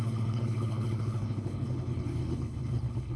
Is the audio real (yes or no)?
no